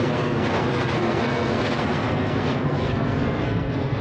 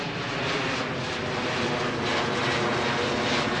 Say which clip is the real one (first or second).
second